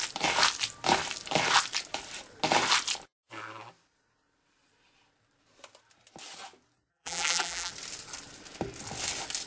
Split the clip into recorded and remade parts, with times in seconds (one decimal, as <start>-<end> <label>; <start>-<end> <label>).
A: 0.0-6.9 recorded; 6.9-7.7 remade; 7.7-9.5 recorded